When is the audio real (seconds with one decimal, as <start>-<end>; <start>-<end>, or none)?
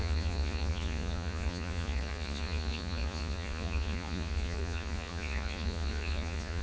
none